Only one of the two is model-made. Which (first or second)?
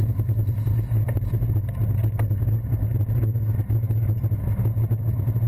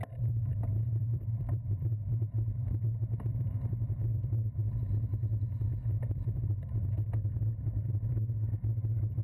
second